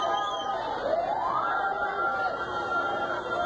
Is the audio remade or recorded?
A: remade